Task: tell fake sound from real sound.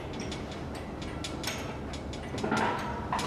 real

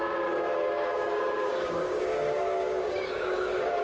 fake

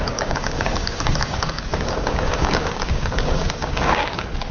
fake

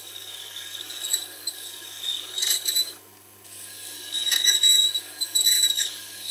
fake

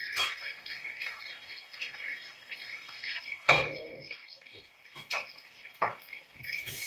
fake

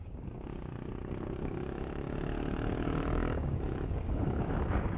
fake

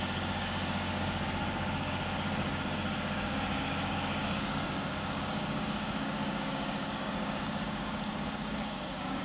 fake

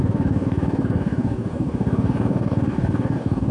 fake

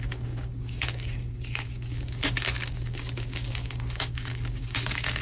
fake